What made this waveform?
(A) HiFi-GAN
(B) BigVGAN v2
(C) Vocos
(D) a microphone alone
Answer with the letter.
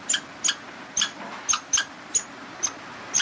D